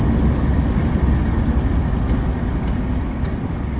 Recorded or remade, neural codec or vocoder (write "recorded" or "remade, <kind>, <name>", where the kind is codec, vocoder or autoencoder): recorded